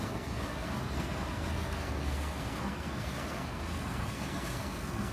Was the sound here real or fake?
fake